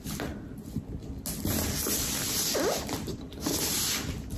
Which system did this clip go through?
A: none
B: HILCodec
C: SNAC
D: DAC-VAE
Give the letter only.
A